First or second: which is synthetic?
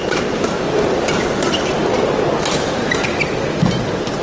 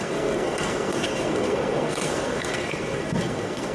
second